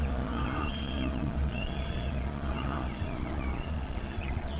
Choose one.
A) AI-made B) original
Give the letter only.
A